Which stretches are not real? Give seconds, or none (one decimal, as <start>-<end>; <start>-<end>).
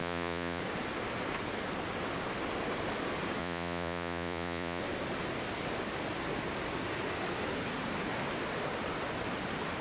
0.0-0.6; 3.4-4.8